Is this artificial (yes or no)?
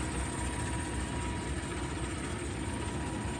no